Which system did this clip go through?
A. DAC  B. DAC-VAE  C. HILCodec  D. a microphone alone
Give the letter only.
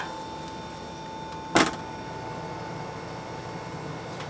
D